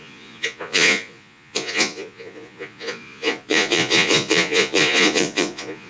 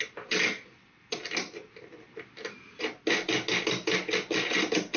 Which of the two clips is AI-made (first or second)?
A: first